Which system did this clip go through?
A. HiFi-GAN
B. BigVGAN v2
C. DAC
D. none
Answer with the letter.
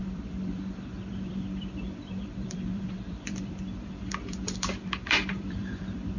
B